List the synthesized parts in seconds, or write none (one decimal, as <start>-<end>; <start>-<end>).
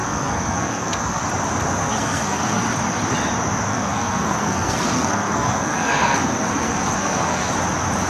0.0-1.2; 1.8-2.6; 3.7-7.5